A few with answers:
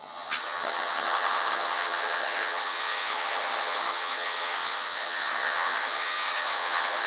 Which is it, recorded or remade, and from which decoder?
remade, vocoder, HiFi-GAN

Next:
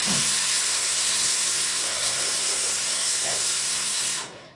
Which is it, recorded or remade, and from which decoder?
remade, codec, SNAC